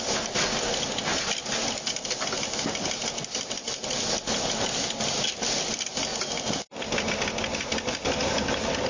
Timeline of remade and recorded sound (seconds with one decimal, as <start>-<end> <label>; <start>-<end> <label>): 0.0-1.1 recorded; 1.1-2.0 remade; 2.0-7.7 recorded; 7.7-8.2 remade; 8.2-8.9 recorded